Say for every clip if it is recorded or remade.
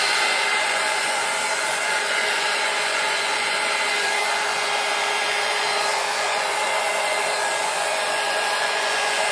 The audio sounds remade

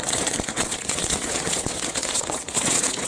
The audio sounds remade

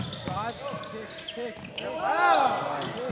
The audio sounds recorded